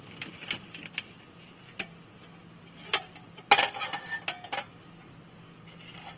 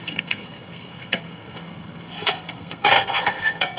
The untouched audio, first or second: first